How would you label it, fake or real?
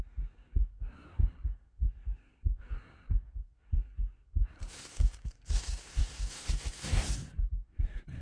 fake